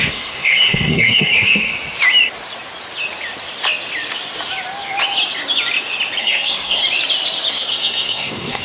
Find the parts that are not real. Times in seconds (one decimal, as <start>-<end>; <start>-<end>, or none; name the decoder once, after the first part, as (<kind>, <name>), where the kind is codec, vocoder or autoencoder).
0.0-1.7 (codec, SNAC); 6.2-6.8; 7.5-8.6